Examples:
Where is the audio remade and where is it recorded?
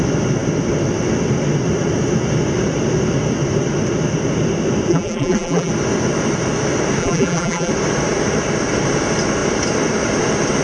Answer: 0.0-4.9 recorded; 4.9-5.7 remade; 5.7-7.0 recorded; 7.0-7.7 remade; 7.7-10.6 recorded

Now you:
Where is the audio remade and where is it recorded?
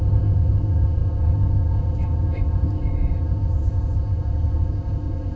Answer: 0.0-5.4 remade